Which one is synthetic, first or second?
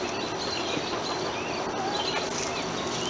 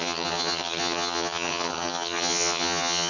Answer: second